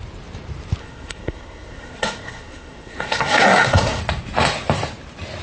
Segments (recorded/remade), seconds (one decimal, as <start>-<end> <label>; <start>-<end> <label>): 0.0-0.8 recorded; 0.8-4.0 remade; 4.0-5.4 recorded